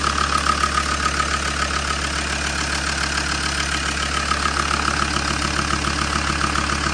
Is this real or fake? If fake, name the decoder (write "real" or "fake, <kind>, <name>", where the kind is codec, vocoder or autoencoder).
real